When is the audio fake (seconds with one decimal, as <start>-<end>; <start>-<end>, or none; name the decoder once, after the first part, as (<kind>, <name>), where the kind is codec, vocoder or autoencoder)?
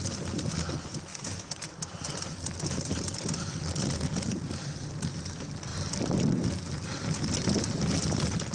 none